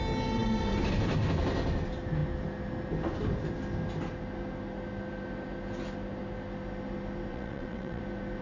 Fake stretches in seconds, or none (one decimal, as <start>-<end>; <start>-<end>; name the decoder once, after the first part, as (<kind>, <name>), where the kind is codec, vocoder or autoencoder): 7.3-8.0 (vocoder, WaveNeXt)